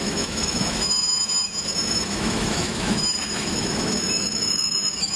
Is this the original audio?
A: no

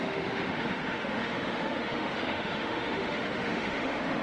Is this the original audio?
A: no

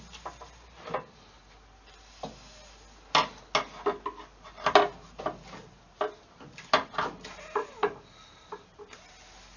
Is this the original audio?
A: yes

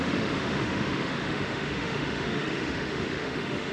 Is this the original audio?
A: no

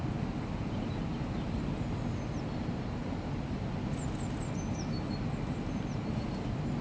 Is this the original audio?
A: yes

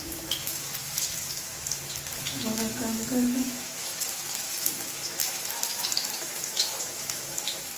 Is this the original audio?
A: no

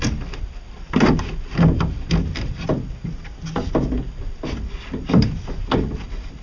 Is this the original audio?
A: yes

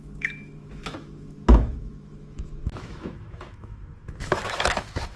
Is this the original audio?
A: no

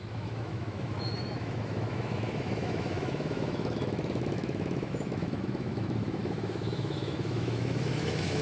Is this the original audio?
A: no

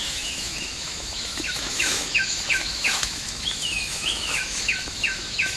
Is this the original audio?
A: no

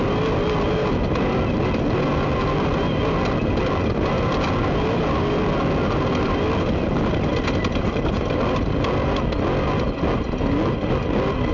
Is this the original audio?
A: yes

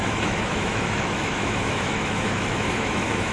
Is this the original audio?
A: no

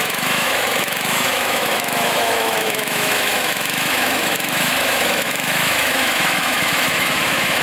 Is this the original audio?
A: no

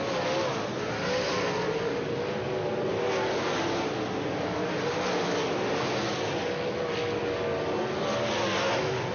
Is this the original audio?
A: yes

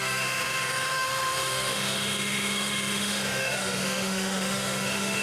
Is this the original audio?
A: no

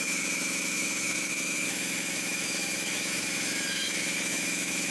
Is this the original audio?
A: no